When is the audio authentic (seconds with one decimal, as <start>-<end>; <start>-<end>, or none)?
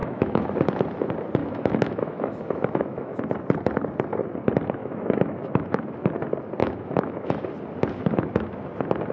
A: 0.5-1.4; 3.2-4.8; 5.8-6.6; 7.4-9.1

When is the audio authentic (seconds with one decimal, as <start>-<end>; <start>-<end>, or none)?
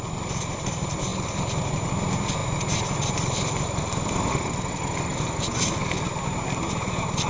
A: 0.0-7.3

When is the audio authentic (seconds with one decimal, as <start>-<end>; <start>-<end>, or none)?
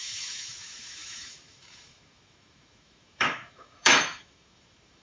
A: none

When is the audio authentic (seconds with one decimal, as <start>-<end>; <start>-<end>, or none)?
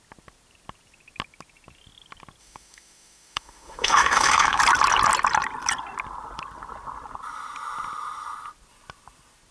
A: 0.0-2.4; 4.6-9.5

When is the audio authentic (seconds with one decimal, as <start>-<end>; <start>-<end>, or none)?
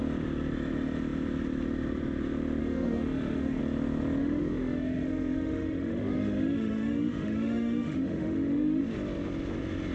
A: 0.0-2.6; 3.6-4.2; 8.8-9.9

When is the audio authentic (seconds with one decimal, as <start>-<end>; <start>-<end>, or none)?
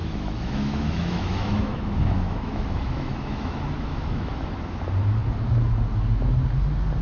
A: 3.5-3.9; 4.5-7.0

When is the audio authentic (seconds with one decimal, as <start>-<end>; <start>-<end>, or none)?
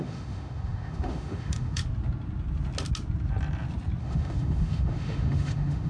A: 1.8-4.0